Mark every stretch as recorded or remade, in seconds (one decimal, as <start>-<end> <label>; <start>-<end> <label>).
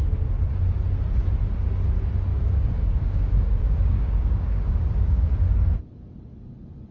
0.0-2.3 recorded; 2.3-5.3 remade; 5.3-6.9 recorded